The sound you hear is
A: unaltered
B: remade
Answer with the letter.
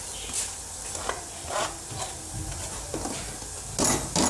A